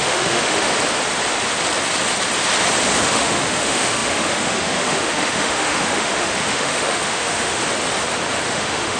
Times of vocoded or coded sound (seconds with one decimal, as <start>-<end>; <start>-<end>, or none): 0.0-0.7; 3.0-7.6; 8.5-9.0